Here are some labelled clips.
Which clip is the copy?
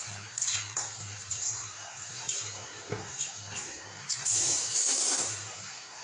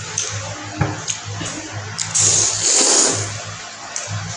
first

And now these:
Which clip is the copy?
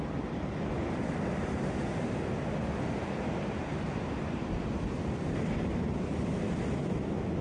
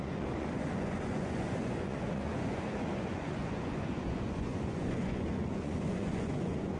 second